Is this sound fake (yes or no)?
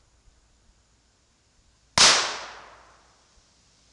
no